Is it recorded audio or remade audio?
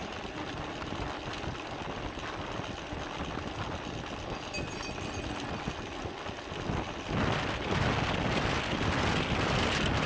recorded